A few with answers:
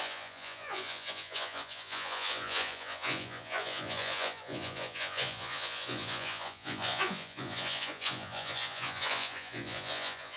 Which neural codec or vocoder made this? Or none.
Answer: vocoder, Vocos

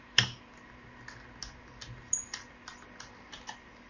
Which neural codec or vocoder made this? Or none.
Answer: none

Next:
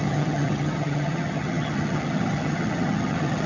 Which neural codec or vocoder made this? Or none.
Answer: vocoder, HiFi-GAN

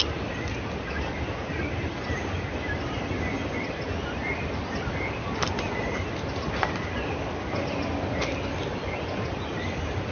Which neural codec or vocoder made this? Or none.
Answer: none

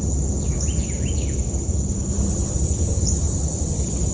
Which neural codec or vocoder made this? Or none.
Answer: none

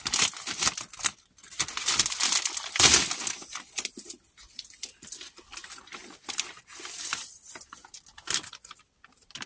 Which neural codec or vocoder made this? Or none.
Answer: none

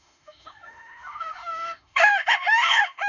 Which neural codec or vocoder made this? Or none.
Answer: autoencoder, DAC-VAE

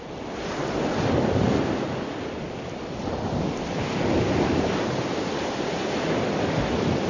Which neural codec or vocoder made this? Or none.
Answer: none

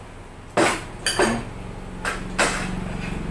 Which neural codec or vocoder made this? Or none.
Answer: none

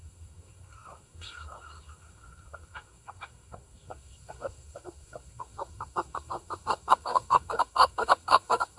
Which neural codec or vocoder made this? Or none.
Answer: codec, SNAC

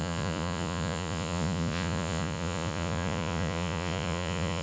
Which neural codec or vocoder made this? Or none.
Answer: vocoder, Vocos